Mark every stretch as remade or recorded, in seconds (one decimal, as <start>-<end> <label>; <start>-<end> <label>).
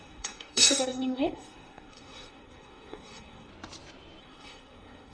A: 0.0-3.5 remade; 3.5-4.2 recorded; 4.2-5.1 remade